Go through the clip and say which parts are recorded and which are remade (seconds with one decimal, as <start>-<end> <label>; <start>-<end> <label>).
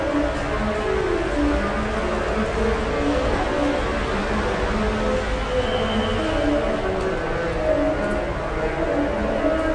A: 0.0-2.9 recorded; 2.9-3.4 remade; 3.4-9.7 recorded